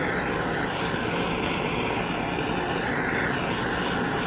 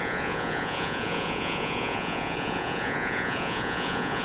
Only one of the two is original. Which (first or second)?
first